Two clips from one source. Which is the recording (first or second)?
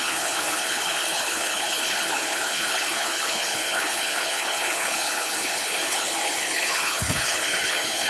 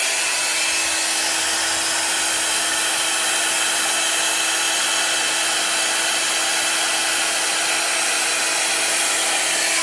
second